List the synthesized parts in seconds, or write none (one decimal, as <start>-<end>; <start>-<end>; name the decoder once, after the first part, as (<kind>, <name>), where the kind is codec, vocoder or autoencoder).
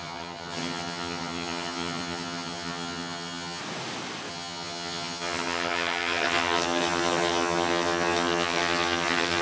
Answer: 0.0-3.6 (vocoder, HiFi-GAN); 4.3-9.4